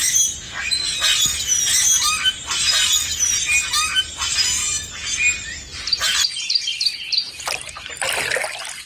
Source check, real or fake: real